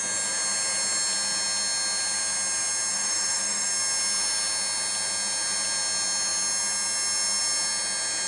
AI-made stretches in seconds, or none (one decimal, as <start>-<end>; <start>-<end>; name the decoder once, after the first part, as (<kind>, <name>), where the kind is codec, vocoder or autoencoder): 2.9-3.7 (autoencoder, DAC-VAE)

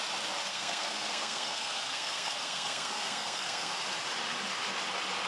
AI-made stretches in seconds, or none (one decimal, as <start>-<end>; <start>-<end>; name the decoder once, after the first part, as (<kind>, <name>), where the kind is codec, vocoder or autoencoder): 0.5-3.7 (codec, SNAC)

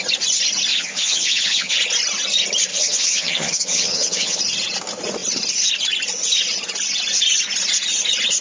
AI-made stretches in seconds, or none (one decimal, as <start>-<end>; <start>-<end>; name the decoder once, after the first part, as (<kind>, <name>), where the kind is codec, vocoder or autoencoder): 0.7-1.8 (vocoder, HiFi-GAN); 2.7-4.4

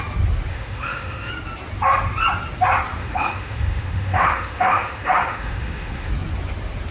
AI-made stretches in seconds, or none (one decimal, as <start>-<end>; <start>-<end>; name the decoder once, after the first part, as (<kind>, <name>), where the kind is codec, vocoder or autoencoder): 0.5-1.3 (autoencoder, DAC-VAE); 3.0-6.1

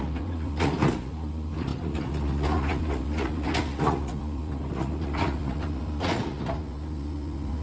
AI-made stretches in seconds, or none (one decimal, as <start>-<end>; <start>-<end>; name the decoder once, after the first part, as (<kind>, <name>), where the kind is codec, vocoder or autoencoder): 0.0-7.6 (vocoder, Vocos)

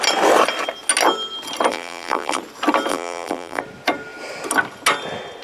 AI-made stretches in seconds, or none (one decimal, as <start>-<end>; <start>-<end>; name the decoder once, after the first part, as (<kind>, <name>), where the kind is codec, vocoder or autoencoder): 1.7-2.4 (vocoder, BigVGAN v2); 2.9-3.6

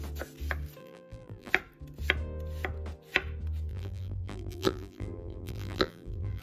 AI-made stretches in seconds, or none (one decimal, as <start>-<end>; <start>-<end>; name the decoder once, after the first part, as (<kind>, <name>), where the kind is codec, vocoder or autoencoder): 0.8-1.5 (vocoder, BigVGAN v2); 3.7-6.4